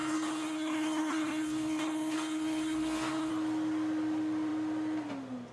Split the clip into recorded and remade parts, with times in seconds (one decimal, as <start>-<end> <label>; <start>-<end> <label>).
0.0-3.3 remade; 3.3-5.5 recorded